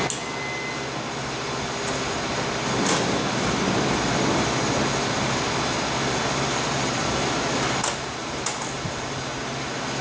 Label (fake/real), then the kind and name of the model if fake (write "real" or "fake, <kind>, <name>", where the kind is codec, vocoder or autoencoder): real